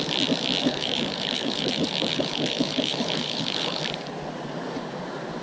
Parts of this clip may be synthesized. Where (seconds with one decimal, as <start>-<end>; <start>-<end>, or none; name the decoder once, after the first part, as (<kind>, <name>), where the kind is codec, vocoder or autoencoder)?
0.6-3.8 (codec, HILCodec)